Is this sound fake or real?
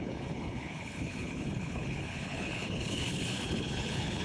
fake